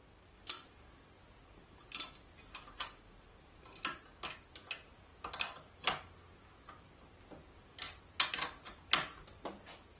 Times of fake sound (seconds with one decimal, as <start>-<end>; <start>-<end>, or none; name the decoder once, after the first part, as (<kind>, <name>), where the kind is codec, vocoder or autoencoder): none